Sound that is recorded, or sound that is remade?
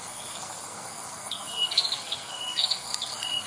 remade